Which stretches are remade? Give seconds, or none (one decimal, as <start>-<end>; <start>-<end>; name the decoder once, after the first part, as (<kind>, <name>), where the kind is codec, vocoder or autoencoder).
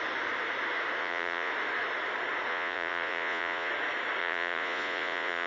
1.0-1.5 (vocoder, Vocos); 2.5-3.7; 4.2-5.5